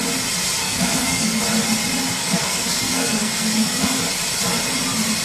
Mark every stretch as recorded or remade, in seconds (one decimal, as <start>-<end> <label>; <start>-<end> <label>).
0.0-0.6 recorded; 0.6-1.4 remade; 1.4-2.2 recorded; 2.2-4.0 remade; 4.0-5.2 recorded